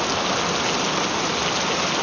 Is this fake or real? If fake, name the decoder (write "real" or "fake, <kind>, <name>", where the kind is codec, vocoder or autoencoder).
real